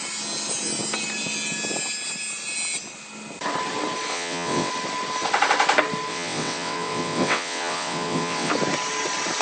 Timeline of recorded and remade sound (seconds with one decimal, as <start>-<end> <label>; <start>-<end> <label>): 0.0-4.1 recorded; 4.1-4.7 remade; 4.7-6.1 recorded; 6.1-8.5 remade; 8.5-9.4 recorded